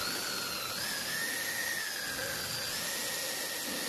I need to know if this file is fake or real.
real